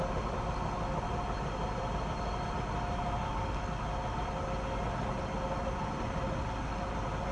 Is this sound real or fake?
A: real